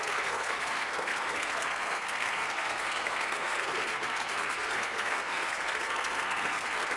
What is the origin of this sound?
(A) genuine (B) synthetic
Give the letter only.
B